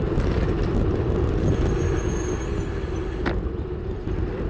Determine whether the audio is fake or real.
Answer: real